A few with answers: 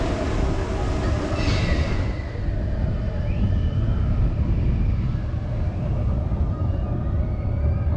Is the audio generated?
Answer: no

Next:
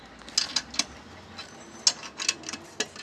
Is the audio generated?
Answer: no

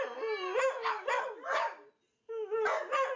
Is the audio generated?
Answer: no